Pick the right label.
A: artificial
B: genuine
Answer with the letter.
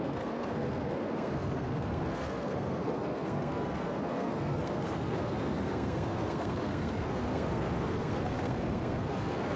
A